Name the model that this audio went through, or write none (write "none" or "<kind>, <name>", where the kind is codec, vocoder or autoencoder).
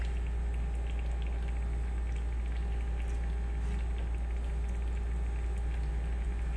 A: none